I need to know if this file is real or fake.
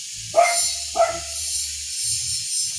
real